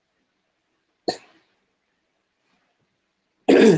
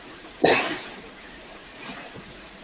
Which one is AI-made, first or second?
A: second